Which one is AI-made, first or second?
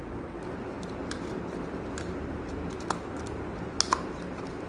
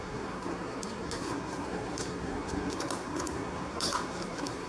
second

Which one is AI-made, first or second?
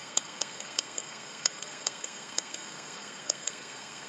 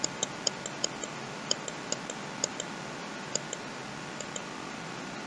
first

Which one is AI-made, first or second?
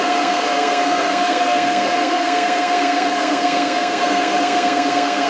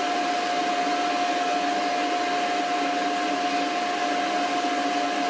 first